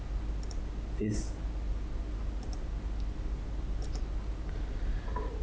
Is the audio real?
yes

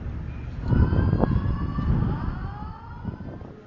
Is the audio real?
yes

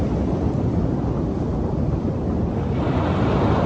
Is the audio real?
yes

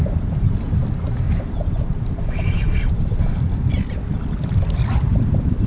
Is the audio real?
no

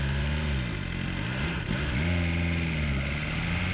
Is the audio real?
yes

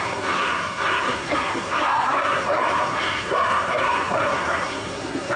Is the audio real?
no